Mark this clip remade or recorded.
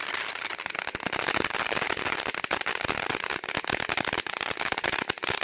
recorded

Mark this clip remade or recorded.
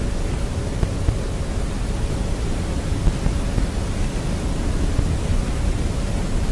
recorded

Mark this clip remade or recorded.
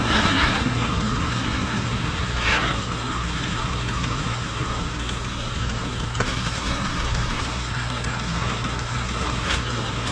remade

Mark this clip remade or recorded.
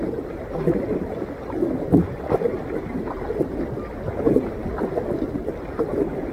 recorded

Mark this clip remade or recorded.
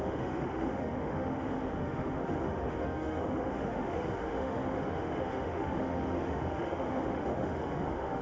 remade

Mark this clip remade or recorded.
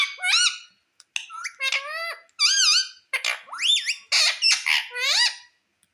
recorded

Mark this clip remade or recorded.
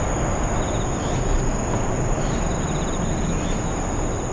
recorded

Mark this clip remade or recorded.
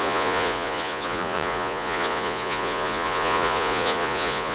remade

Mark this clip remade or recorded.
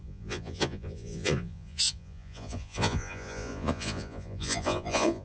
remade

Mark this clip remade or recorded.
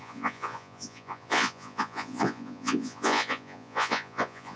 remade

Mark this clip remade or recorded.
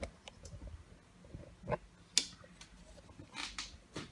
recorded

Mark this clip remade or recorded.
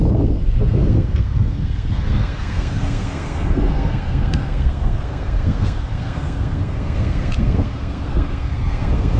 remade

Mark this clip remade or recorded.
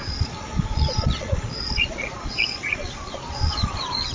remade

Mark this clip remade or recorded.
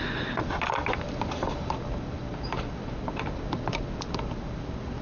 recorded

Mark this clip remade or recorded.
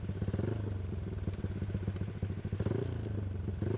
recorded